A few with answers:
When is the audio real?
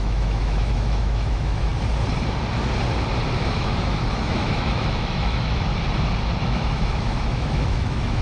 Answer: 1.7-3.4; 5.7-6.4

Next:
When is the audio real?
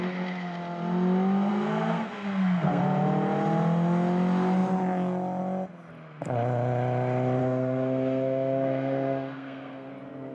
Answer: 0.0-1.5; 2.8-7.4; 9.9-10.3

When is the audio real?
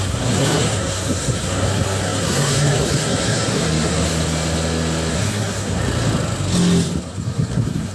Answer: 4.1-5.1; 5.8-7.0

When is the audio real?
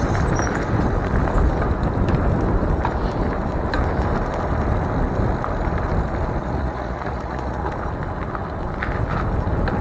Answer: 0.0-6.4; 7.7-9.8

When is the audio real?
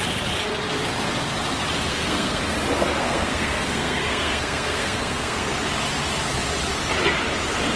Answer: 0.0-1.9; 2.4-3.0; 5.5-7.8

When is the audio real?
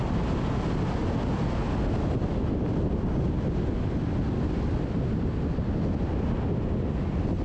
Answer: 0.0-7.4